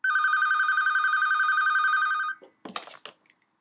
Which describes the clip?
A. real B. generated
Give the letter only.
A